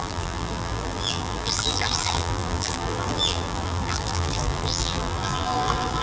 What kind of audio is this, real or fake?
fake